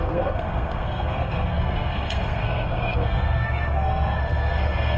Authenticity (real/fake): fake